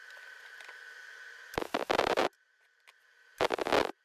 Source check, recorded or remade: recorded